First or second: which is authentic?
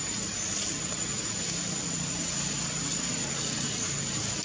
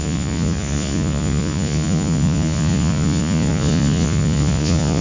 first